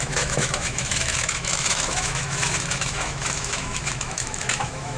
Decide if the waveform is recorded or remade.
remade